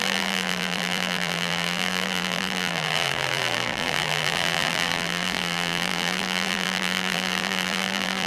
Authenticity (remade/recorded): remade